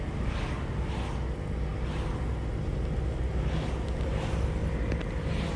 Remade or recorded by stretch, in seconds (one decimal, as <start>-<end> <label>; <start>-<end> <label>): 0.0-5.6 recorded